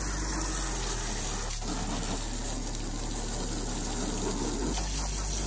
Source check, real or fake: real